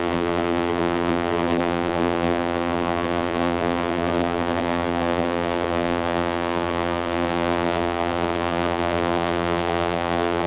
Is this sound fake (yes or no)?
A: yes